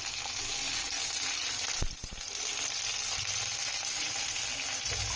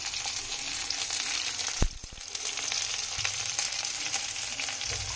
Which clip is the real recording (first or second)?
first